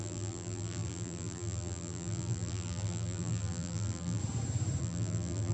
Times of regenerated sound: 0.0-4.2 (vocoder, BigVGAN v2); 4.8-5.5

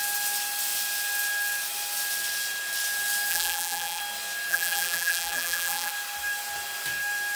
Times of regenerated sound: 3.3-4.0 (vocoder, BigVGAN v2); 4.5-5.9